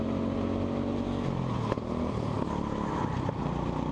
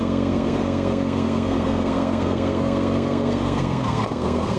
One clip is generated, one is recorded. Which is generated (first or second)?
second